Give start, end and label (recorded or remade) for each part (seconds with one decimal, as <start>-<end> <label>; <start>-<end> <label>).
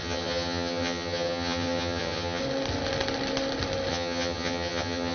0.0-2.4 remade; 2.4-3.9 recorded; 3.9-5.1 remade